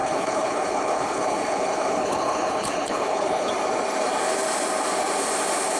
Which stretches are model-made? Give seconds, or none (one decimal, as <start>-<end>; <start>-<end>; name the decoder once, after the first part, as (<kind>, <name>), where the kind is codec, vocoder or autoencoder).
0.0-3.5 (codec, HILCodec)